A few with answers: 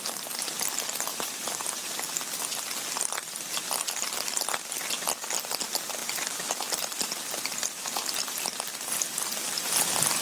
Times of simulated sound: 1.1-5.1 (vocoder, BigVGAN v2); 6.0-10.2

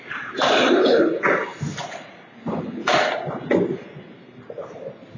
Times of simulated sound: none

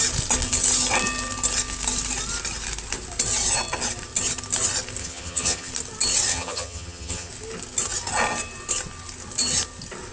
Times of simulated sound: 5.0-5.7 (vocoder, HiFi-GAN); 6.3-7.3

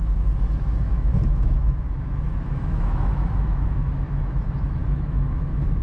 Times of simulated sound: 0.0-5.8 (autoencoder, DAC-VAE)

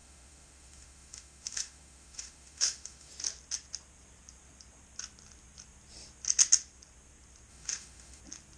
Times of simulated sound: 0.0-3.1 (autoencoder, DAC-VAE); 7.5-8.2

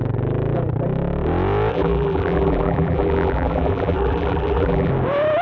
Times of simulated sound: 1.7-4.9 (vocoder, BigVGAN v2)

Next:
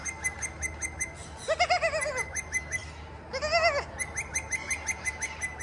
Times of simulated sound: none

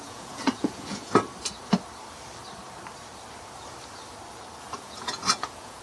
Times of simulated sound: 0.0-1.1 (vocoder, Vocos); 4.6-5.8